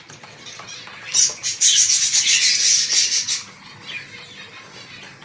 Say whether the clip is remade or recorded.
recorded